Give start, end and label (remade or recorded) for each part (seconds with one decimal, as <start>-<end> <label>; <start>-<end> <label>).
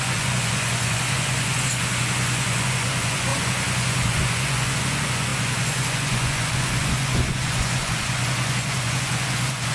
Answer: 0.0-9.7 remade